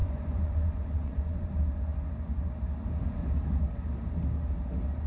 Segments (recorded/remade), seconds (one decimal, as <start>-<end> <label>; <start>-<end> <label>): 0.0-1.5 remade; 1.5-5.1 recorded